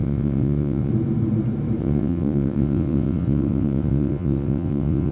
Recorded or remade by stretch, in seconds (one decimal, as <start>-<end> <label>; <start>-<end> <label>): 0.0-0.9 remade; 0.9-1.8 recorded; 1.8-5.1 remade